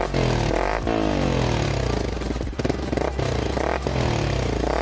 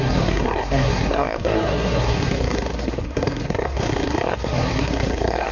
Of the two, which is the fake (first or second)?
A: second